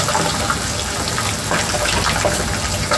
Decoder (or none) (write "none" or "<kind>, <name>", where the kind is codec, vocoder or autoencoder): none